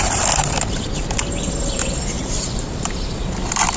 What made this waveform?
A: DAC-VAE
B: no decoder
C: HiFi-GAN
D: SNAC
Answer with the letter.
B